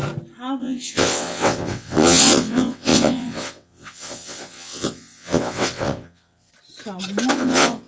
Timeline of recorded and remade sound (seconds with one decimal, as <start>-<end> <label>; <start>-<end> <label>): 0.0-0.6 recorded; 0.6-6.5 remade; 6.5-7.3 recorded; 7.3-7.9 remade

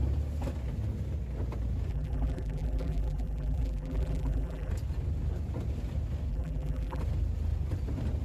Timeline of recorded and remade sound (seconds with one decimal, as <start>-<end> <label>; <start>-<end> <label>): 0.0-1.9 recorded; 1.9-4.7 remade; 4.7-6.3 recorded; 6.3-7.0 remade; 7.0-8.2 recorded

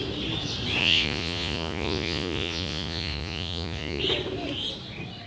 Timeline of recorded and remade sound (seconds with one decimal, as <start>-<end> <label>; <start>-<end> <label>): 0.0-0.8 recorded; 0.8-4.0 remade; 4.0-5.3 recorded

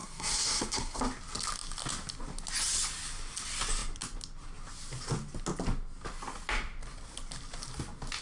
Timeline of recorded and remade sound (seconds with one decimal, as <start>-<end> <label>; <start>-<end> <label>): 0.0-1.0 remade; 1.0-8.2 recorded

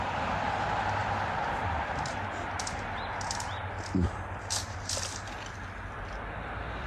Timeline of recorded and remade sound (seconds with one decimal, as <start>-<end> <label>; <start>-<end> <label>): 0.0-6.9 recorded

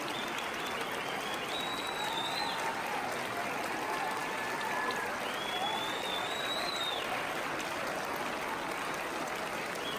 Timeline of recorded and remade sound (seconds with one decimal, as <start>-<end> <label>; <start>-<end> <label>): 0.0-4.2 recorded; 4.2-7.5 remade; 7.5-10.0 recorded

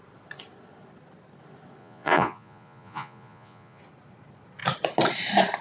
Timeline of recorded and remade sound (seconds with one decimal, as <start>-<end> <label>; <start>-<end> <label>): 0.0-1.8 recorded; 1.8-3.8 remade; 3.8-5.6 recorded

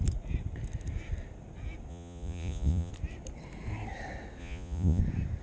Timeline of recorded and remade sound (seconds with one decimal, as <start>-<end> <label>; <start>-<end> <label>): 0.0-1.9 recorded; 1.9-2.9 remade; 2.9-4.4 recorded; 4.4-5.0 remade; 5.0-5.4 recorded